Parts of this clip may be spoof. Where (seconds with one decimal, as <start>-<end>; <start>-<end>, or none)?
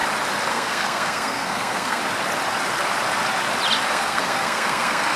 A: 0.5-2.0; 3.9-5.2